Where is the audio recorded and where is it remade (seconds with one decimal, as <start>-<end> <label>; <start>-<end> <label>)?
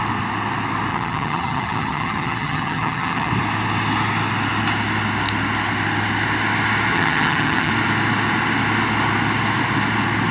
0.0-0.9 recorded; 0.9-3.3 remade; 3.3-6.9 recorded; 6.9-7.7 remade; 7.7-10.3 recorded